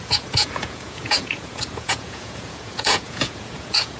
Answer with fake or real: fake